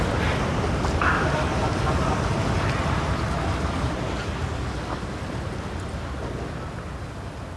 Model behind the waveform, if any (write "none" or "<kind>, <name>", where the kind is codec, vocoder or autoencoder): none